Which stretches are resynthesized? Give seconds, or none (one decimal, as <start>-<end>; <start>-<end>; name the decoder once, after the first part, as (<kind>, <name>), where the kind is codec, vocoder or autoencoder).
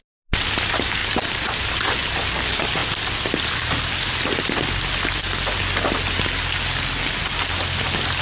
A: 1.0-1.9 (vocoder, BigVGAN v2)